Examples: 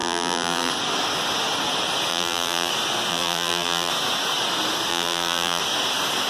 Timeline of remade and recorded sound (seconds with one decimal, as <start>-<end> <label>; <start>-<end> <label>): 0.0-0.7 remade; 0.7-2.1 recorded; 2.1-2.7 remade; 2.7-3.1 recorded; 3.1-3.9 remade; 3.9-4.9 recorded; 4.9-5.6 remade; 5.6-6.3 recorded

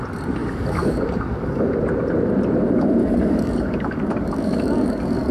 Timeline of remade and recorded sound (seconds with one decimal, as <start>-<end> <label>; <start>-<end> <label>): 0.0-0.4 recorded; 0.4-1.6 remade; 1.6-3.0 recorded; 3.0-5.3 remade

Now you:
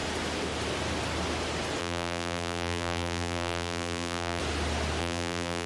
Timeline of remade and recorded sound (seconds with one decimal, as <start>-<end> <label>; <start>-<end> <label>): 0.0-1.8 recorded; 1.8-4.4 remade; 4.4-5.0 recorded; 5.0-5.7 remade

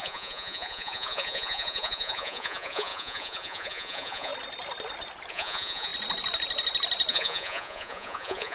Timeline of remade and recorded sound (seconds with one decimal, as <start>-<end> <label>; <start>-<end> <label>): 0.0-4.3 remade; 4.3-5.3 recorded; 5.3-5.9 remade; 5.9-7.1 recorded; 7.1-8.5 remade